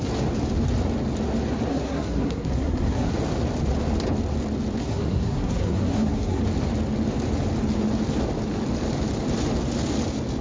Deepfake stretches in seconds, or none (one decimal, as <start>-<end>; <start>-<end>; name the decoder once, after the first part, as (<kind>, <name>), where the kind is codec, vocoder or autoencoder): 1.7-3.1 (codec, SNAC); 4.8-6.4